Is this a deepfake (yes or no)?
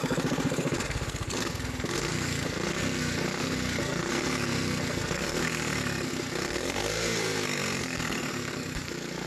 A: yes